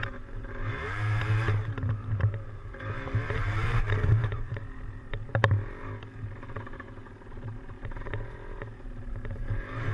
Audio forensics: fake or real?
fake